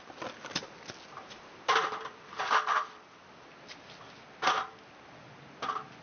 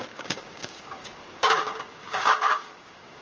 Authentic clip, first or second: first